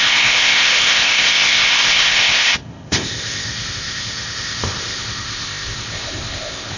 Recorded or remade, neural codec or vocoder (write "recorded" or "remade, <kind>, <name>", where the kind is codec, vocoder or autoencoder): remade, codec, ZipCodec